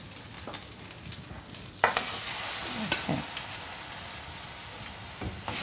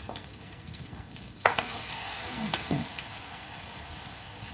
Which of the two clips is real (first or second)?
first